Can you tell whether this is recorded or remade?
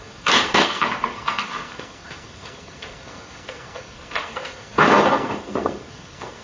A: remade